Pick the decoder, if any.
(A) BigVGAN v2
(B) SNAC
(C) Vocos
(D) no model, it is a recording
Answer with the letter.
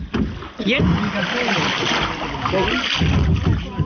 D